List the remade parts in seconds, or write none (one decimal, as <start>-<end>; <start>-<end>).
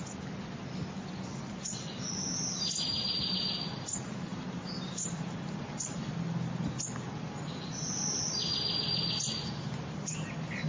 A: 4.3-6.0